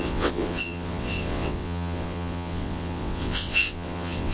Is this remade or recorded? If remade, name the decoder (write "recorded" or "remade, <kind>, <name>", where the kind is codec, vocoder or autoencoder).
remade, vocoder, WaveNeXt